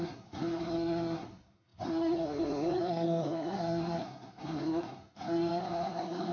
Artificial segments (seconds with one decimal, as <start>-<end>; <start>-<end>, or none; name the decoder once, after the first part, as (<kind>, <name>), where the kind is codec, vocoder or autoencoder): 0.0-6.3 (codec, SNAC)